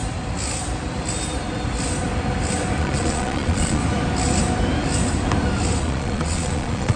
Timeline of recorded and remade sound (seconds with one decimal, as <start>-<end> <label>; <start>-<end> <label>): 0.0-2.8 recorded; 2.8-3.8 remade; 3.8-5.8 recorded; 5.8-7.0 remade